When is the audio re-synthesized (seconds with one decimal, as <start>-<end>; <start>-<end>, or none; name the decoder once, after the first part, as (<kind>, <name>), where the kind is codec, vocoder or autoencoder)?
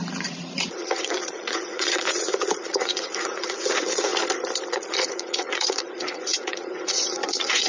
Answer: 0.0-4.1 (vocoder, Vocos); 4.7-7.7